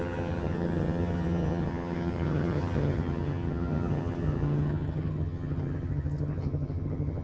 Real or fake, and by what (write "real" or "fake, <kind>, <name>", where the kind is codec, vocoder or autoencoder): fake, vocoder, HiFi-GAN